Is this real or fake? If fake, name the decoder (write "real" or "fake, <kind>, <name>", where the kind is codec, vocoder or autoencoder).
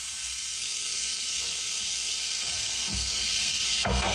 fake, codec, SNAC